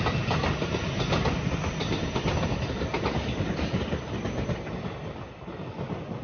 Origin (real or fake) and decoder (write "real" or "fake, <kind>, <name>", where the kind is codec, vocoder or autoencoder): real